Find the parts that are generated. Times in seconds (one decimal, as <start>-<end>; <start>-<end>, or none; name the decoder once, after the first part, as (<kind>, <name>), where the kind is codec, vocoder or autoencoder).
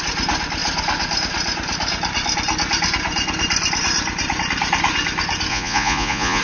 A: 5.5-6.4 (vocoder, Vocos)